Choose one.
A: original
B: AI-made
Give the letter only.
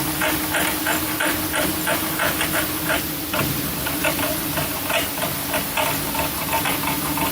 A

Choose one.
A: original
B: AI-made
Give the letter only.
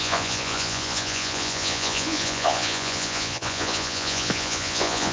B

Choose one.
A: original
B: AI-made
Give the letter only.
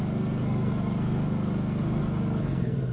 B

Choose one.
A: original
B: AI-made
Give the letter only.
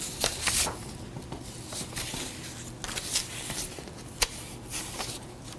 A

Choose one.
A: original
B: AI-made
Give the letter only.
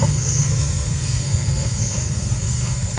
B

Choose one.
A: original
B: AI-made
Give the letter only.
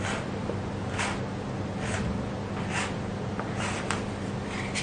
A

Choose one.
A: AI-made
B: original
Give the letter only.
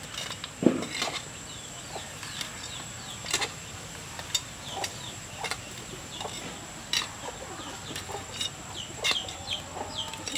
B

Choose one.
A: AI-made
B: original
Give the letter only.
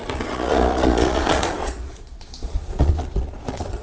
A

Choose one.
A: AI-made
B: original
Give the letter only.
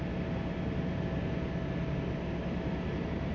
B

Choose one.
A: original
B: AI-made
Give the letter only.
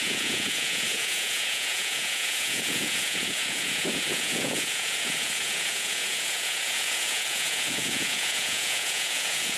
B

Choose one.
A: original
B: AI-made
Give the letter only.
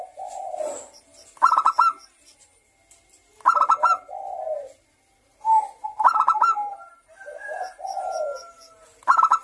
A